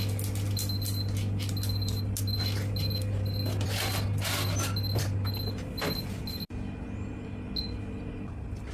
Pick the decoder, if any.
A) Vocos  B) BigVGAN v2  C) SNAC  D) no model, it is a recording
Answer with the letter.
D